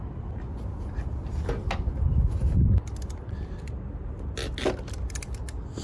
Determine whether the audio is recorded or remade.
recorded